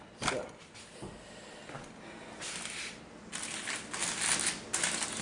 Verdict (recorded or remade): recorded